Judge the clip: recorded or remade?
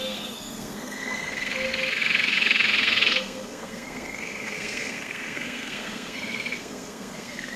remade